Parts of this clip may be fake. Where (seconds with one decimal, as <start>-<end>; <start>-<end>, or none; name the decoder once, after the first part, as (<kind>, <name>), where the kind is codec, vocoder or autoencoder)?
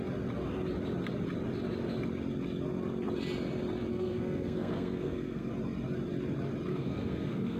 3.9-5.5 (codec, SNAC); 6.7-7.6